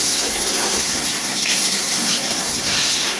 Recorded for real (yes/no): no